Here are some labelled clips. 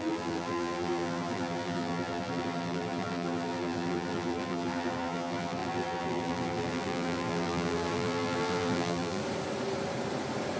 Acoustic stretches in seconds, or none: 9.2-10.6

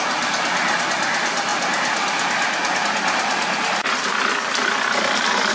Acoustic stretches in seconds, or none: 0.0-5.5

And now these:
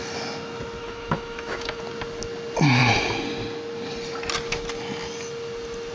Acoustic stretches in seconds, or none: 0.0-0.8; 1.8-5.9

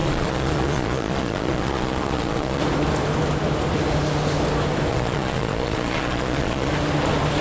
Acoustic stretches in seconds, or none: 2.6-4.9; 6.7-7.4